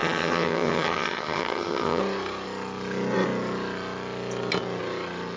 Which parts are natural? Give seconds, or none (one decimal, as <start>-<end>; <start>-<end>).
2.0-5.4